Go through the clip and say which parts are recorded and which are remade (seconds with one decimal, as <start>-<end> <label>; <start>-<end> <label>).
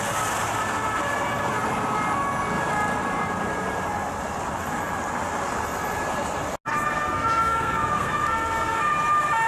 0.0-6.7 recorded; 6.7-8.8 remade; 8.8-9.5 recorded